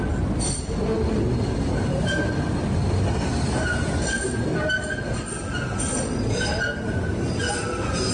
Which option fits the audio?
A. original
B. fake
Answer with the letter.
A